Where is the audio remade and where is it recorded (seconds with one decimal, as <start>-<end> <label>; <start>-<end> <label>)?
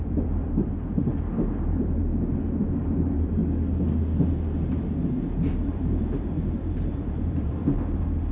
0.0-2.1 remade; 2.1-2.6 recorded; 2.6-3.4 remade; 3.4-5.3 recorded; 5.3-7.6 remade; 7.6-8.3 recorded